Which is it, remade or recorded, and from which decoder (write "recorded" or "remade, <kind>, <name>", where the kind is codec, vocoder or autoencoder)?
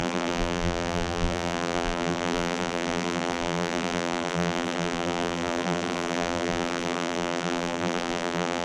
remade, vocoder, BigVGAN v2